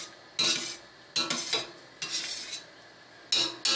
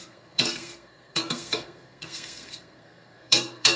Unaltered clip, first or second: first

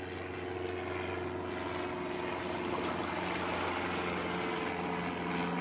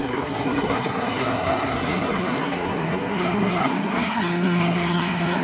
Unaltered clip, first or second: first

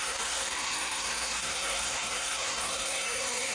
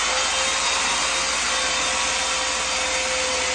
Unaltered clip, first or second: second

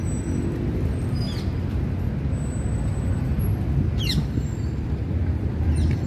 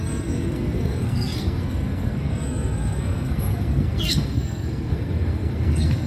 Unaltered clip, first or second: first